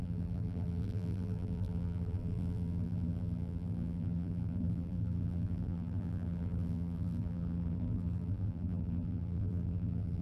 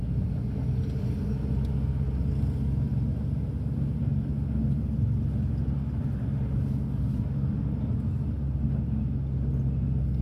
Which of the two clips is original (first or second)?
second